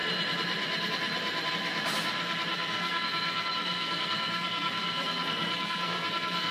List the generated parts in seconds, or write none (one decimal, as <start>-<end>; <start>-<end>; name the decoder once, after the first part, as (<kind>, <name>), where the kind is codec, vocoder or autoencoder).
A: 2.5-6.5 (codec, SNAC)